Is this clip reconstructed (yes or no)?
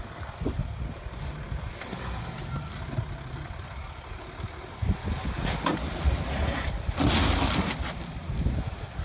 no